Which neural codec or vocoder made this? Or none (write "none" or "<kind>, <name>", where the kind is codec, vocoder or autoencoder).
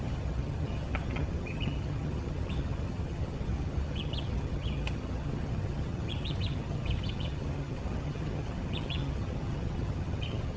vocoder, HiFi-GAN